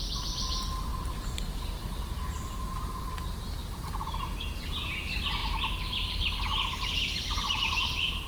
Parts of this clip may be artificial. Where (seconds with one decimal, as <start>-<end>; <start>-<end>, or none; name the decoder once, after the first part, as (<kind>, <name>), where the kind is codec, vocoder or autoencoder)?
0.9-1.8 (vocoder, BigVGAN v2); 5.4-6.1